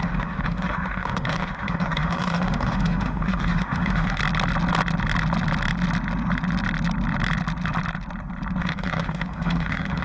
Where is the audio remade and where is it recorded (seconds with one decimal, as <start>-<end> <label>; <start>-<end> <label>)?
0.0-4.2 remade; 4.2-8.6 recorded; 8.6-10.0 remade